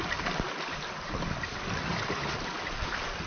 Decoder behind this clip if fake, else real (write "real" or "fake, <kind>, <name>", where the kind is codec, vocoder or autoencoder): real